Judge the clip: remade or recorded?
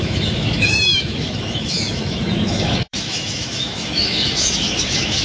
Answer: remade